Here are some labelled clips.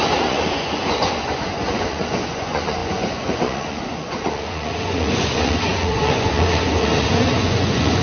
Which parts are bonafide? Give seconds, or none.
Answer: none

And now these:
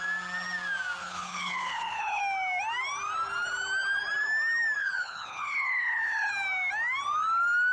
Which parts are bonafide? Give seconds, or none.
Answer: 0.0-1.0; 2.2-4.8; 6.3-7.7

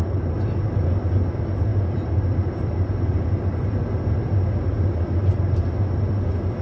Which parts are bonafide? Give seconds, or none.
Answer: 0.0-1.7; 4.1-6.6